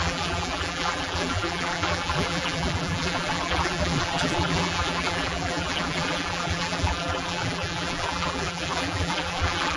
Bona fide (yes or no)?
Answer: no